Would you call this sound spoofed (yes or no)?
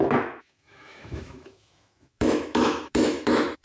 yes